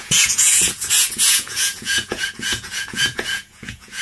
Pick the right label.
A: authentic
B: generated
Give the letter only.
B